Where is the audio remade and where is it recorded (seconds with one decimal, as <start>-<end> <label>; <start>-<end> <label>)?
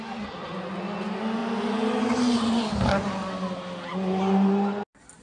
0.0-5.2 recorded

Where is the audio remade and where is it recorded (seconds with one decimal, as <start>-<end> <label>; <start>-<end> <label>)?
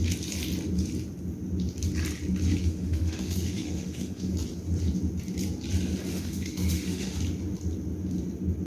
0.0-2.6 recorded; 2.6-4.3 remade; 4.3-6.1 recorded; 6.1-7.2 remade; 7.2-8.7 recorded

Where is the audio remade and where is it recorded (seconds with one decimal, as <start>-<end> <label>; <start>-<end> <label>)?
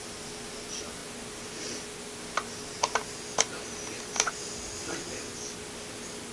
0.0-6.3 recorded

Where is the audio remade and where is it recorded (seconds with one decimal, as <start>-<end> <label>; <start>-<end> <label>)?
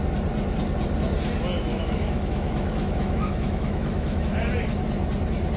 0.0-1.7 recorded; 1.7-4.3 remade; 4.3-5.6 recorded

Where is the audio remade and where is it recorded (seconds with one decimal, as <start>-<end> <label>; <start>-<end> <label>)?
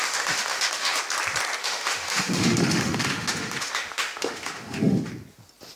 0.0-1.0 remade; 1.0-1.6 recorded; 1.6-5.1 remade; 5.1-5.8 recorded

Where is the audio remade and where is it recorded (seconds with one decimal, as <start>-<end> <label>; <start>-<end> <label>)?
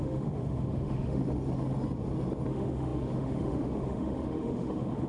0.0-1.2 remade; 1.2-2.5 recorded; 2.5-5.1 remade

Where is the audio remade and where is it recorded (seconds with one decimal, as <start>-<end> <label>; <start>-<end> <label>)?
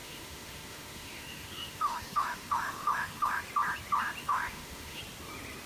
0.0-3.4 remade; 3.4-4.2 recorded; 4.2-5.0 remade; 5.0-5.7 recorded